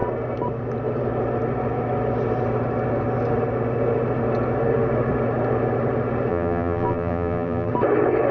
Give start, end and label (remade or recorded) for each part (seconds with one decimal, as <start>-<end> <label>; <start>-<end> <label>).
0.0-6.3 recorded; 6.3-7.7 remade; 7.7-8.3 recorded